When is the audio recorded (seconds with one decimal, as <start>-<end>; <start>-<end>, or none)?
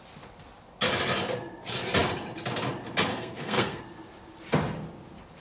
0.0-3.1; 3.8-5.4